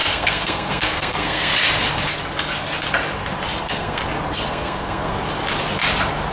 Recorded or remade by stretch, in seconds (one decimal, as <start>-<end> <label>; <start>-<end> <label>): 0.0-1.5 remade; 1.5-3.6 recorded; 3.6-4.0 remade; 4.0-4.5 recorded; 4.5-5.1 remade; 5.1-6.3 recorded